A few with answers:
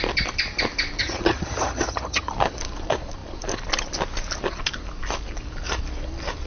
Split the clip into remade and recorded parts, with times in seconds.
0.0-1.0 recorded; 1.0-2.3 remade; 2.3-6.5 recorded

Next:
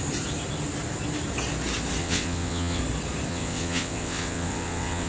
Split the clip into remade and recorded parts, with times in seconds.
0.0-2.0 recorded; 2.0-2.8 remade; 2.8-3.3 recorded; 3.3-5.1 remade

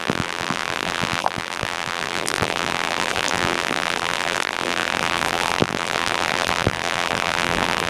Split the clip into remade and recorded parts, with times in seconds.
0.0-7.9 remade

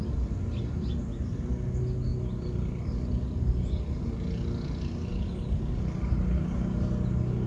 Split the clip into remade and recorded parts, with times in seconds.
0.0-7.5 recorded

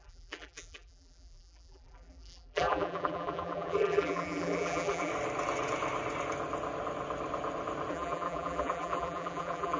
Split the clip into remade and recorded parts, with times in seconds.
0.0-5.1 remade; 5.1-7.9 recorded; 7.9-9.8 remade

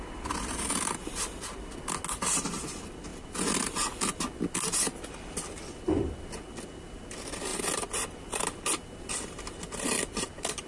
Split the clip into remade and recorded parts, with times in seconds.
0.0-10.7 recorded

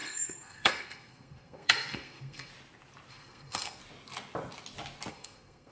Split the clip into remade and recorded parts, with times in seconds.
0.0-2.5 remade; 2.5-3.1 recorded; 3.1-3.8 remade; 3.8-5.1 recorded; 5.1-5.7 remade

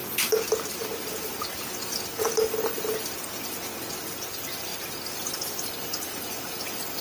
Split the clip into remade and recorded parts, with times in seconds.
0.0-7.0 recorded